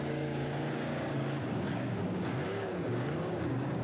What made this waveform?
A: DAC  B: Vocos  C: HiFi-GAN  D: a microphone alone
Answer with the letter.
A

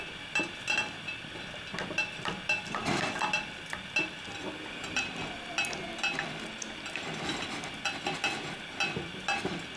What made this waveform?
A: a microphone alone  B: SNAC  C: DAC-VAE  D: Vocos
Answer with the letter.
A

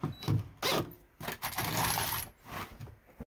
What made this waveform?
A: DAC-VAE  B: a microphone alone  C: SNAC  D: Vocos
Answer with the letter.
B